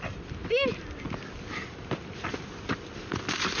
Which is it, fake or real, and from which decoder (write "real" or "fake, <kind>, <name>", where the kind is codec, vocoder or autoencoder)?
real